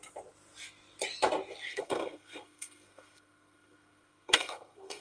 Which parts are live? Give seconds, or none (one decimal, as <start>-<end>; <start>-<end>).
0.0-1.7